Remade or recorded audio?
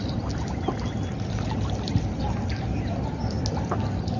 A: recorded